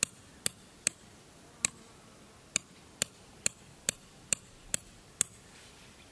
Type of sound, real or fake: real